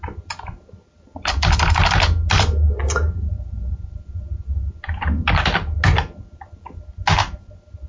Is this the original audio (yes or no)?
yes